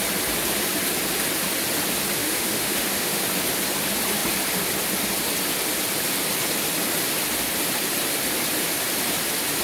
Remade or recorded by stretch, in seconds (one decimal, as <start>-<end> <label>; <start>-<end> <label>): 0.0-2.2 recorded; 2.2-3.2 remade; 3.2-9.6 recorded